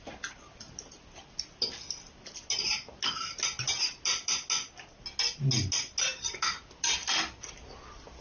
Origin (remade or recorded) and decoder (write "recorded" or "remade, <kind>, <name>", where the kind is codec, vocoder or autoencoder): recorded